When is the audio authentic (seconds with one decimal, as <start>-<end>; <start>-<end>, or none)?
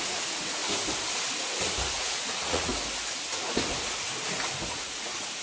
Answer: 0.6-1.9; 2.7-4.7